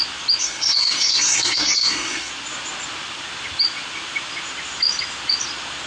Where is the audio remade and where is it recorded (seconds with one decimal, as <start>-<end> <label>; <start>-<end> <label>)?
0.0-0.4 recorded; 0.4-2.3 remade; 2.3-5.9 recorded